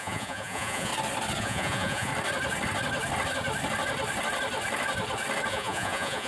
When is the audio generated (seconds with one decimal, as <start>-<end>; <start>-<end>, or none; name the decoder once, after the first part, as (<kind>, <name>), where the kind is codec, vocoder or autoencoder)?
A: 0.0-0.9 (vocoder, Vocos); 1.4-2.1; 5.5-6.3

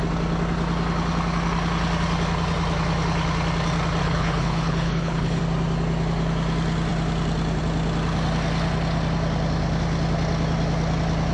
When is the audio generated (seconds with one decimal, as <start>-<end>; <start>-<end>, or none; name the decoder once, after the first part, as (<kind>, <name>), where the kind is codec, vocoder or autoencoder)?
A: 4.0-5.4 (codec, HILCodec)

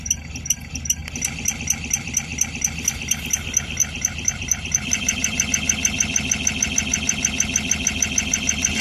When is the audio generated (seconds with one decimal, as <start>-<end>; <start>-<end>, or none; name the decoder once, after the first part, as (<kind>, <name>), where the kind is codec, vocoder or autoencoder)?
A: 3.8-5.5 (vocoder, BigVGAN v2)

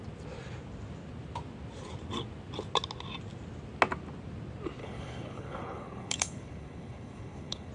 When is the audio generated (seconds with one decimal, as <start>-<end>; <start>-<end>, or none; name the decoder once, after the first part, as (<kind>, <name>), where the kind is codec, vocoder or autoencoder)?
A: 4.8-7.7 (codec, HILCodec)

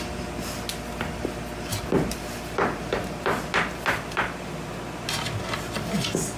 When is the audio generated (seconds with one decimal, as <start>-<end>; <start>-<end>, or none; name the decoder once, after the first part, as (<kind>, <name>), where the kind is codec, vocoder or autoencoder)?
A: 1.7-3.5 (vocoder, BigVGAN v2)

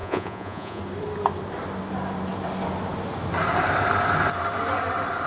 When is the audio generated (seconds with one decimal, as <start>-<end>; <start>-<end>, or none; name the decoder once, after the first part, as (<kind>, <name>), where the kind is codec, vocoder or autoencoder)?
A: 0.0-0.8 (vocoder, Vocos)

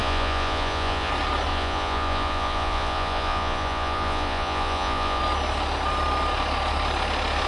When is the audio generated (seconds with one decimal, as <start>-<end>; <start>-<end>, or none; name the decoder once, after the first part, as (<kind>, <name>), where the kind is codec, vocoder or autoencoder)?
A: 0.0-1.1 (vocoder, Vocos); 1.5-5.2